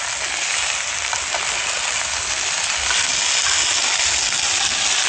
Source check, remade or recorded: recorded